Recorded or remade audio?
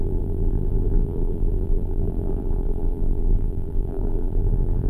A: remade